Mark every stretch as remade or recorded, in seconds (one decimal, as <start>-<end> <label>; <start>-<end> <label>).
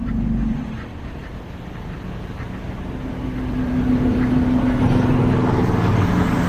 0.0-6.5 recorded